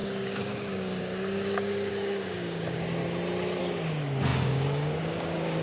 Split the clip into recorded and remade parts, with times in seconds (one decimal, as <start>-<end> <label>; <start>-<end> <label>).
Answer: 0.0-3.0 remade; 3.0-3.6 recorded; 3.6-5.6 remade